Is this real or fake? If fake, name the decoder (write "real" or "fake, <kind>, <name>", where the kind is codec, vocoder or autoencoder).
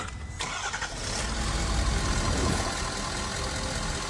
real